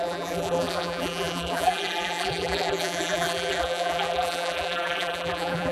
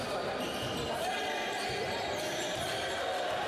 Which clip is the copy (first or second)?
first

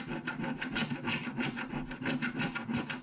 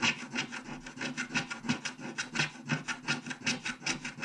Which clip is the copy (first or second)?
first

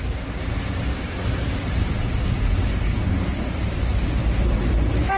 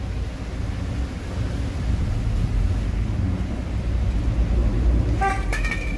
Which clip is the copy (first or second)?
first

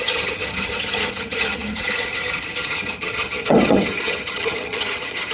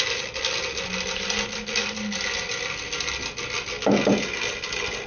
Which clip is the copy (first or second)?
first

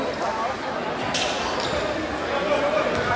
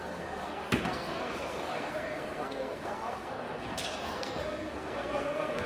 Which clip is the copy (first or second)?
second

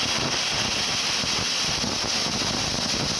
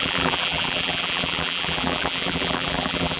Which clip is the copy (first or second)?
second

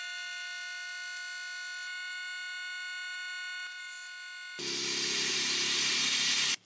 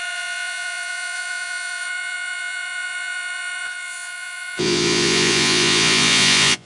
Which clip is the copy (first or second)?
second